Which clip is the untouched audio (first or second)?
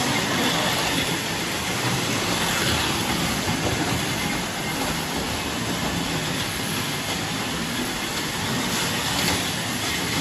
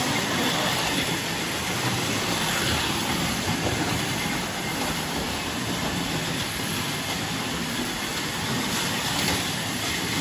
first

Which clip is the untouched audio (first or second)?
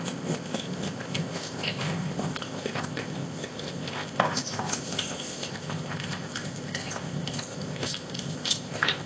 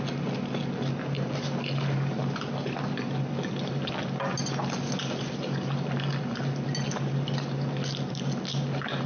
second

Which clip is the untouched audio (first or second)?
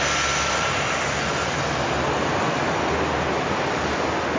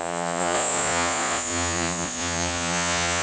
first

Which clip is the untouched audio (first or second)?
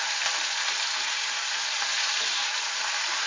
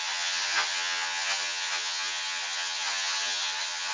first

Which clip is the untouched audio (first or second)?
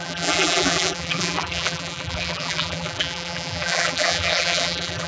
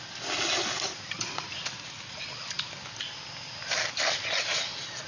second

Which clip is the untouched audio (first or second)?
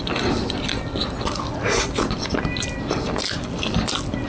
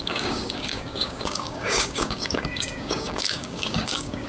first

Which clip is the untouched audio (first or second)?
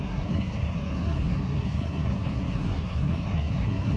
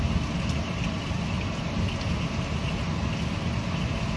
second